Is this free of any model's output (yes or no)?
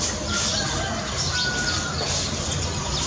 yes